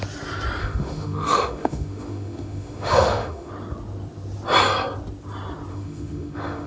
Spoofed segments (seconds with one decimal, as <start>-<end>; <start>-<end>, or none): 0.6-3.5; 5.7-6.7